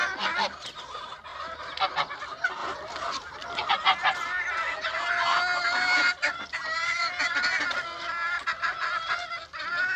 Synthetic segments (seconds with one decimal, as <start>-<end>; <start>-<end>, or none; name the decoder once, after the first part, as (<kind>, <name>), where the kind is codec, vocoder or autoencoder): 1.3-1.9 (vocoder, BigVGAN v2)